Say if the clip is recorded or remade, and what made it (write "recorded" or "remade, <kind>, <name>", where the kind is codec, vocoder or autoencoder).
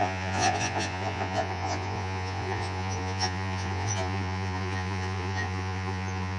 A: remade, vocoder, Vocos